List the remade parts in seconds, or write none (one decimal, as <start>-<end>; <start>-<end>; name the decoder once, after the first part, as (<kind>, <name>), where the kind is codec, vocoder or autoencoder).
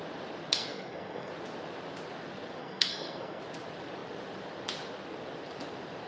0.5-1.3 (codec, SNAC); 2.6-3.4